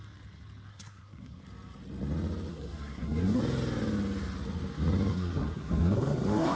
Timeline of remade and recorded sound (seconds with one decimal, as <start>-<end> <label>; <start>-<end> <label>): 0.0-0.7 recorded; 0.7-1.4 remade; 1.4-2.5 recorded; 2.5-3.4 remade; 3.4-5.1 recorded; 5.1-6.6 remade